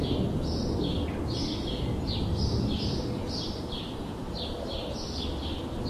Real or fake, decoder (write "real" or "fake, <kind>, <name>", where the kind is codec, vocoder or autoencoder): real